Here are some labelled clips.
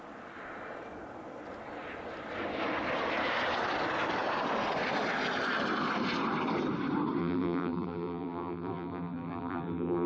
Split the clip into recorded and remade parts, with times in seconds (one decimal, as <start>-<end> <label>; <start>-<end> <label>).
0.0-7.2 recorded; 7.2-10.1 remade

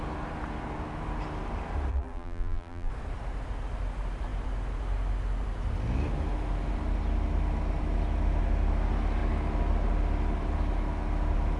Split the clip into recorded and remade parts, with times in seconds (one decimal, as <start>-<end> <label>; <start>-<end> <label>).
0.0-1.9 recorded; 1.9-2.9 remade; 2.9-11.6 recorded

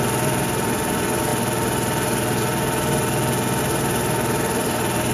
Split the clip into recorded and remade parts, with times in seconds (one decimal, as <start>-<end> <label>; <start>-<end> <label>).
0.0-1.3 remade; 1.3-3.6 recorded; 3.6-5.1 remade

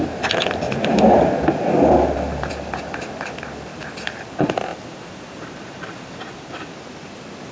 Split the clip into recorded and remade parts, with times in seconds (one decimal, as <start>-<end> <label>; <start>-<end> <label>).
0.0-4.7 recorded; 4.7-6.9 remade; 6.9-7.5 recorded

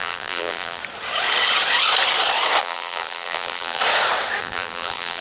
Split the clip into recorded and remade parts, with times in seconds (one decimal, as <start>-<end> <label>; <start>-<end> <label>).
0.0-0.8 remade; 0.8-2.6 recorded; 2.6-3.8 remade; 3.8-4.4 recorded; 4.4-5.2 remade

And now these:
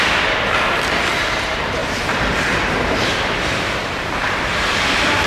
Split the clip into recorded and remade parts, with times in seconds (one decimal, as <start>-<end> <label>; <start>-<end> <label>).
0.0-1.8 recorded; 1.8-5.3 remade

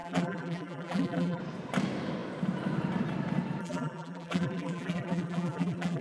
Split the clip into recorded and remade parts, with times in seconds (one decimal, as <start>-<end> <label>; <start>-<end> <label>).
0.0-1.4 remade; 1.4-3.6 recorded; 3.6-6.0 remade